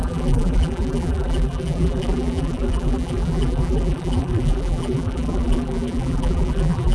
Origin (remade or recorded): remade